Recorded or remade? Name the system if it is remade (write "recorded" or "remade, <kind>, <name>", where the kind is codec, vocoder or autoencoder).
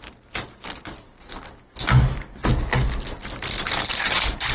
recorded